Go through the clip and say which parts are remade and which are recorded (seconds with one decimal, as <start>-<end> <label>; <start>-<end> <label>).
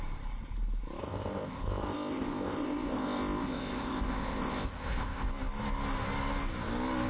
0.0-1.0 recorded; 1.0-5.3 remade; 5.3-7.1 recorded